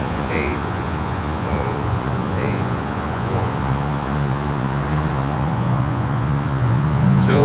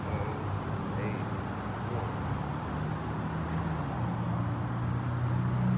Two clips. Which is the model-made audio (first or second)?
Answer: first